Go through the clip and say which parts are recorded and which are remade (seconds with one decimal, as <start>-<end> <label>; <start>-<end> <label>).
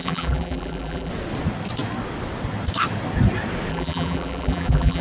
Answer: 0.0-1.1 remade; 1.1-3.7 recorded; 3.7-5.0 remade